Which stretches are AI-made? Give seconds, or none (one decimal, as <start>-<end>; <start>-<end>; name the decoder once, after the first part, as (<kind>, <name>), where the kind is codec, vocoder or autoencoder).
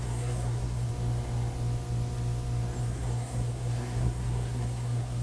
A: 0.0-0.9 (codec, SNAC); 2.8-5.2